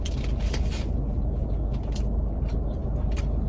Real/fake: real